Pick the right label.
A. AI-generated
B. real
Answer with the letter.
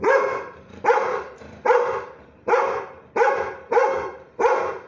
A